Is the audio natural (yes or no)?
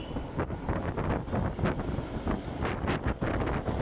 yes